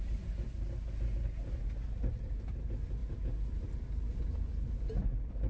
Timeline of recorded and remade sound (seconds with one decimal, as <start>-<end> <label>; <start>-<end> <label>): 0.0-5.5 recorded